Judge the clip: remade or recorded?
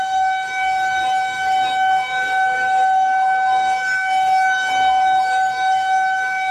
remade